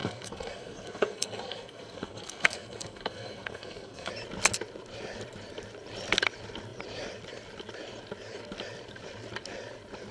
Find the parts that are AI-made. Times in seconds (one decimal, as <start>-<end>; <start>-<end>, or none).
0.0-4.1